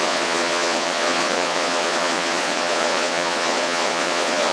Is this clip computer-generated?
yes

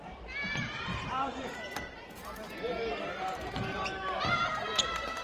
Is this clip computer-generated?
yes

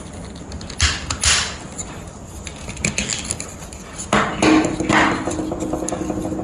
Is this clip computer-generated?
no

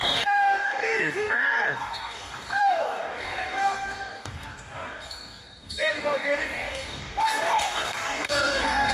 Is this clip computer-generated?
yes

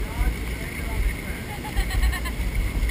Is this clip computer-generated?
no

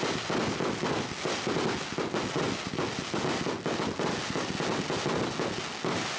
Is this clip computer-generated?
no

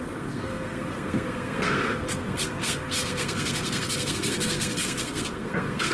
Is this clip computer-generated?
yes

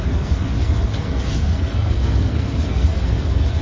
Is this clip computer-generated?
yes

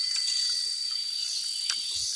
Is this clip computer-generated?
no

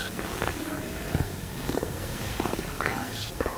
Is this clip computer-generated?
yes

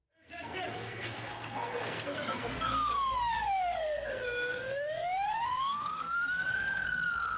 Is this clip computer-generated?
yes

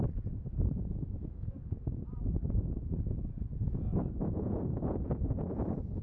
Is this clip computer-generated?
yes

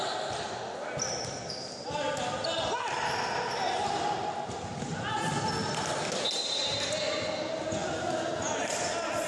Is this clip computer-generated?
no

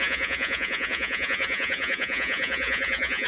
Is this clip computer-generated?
yes